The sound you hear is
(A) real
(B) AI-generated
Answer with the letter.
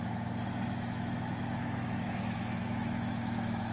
B